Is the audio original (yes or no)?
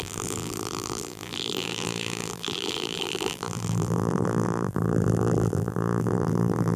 no